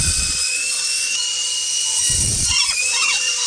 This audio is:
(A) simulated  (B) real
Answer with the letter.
A